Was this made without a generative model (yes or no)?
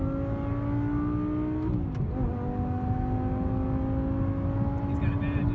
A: yes